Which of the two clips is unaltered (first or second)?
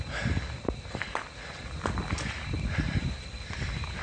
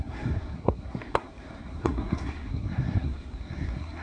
first